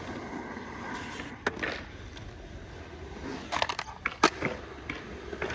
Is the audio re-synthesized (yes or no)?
no